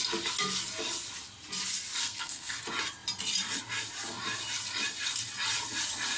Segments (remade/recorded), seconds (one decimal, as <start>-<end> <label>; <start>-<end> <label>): 0.0-2.0 recorded; 2.0-2.6 remade; 2.6-6.2 recorded